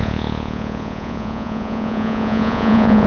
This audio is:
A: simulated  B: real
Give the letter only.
A